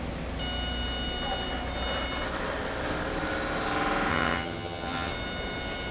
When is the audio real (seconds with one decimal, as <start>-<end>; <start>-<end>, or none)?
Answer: 0.0-4.1; 5.1-5.9